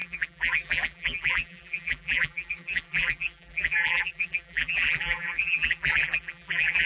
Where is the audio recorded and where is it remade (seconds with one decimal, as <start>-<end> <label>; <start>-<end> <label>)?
0.0-6.9 remade